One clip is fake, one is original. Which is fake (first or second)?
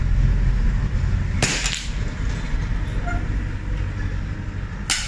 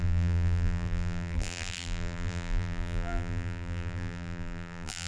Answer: second